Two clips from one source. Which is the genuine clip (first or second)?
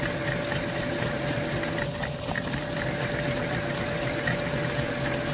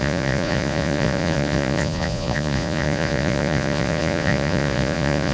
first